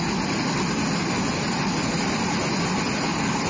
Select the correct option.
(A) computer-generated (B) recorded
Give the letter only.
B